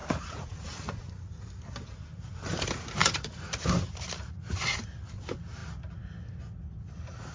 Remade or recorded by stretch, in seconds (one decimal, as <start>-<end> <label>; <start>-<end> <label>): 0.0-1.0 remade; 1.0-3.0 recorded; 3.0-3.5 remade; 3.5-7.3 recorded